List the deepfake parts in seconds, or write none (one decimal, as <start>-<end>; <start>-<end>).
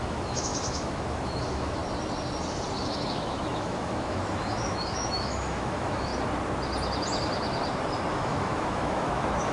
0.0-1.8; 2.8-6.1; 8.1-9.5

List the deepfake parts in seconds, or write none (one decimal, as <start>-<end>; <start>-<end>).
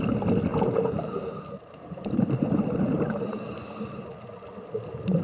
0.5-3.6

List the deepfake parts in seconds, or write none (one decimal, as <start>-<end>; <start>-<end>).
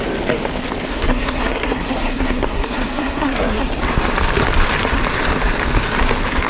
0.9-3.7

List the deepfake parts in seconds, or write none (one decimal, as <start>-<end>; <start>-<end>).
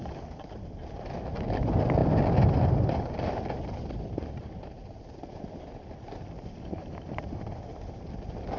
none